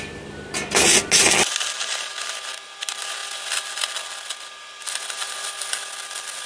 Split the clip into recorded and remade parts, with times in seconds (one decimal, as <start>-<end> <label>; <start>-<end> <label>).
0.0-6.5 recorded